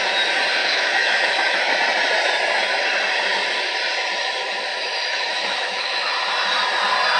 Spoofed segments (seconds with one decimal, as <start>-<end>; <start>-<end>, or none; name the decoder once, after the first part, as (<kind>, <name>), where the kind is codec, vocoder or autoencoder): 0.6-1.7 (autoencoder, DAC-VAE); 4.7-6.1